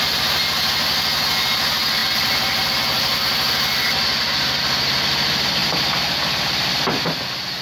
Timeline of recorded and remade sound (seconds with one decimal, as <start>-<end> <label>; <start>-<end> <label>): 0.0-7.6 recorded